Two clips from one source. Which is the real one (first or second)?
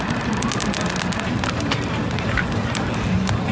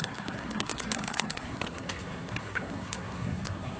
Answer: first